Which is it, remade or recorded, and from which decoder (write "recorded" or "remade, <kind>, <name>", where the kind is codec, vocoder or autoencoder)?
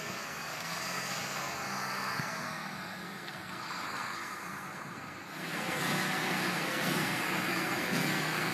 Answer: remade, codec, SNAC